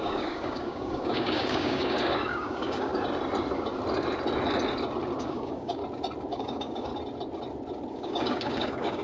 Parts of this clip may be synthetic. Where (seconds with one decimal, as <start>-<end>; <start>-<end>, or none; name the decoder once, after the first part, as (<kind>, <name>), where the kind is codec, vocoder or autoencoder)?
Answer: 0.0-2.9 (codec, DAC); 5.2-5.8; 6.3-6.9; 7.9-9.0